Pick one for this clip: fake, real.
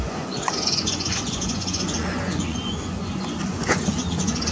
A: fake